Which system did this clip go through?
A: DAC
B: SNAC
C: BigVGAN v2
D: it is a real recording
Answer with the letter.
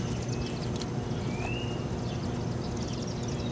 D